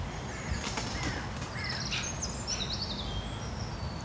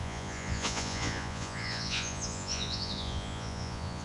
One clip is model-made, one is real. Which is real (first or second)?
first